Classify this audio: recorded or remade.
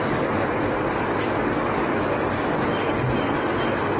recorded